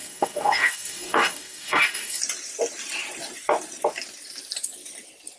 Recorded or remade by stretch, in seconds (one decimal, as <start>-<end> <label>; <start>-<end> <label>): 0.0-2.2 remade; 2.2-5.4 recorded